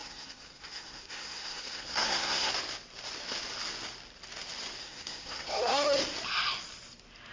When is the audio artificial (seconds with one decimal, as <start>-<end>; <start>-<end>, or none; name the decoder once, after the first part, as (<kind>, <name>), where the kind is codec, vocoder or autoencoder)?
0.0-2.5 (codec, SNAC); 4.8-6.0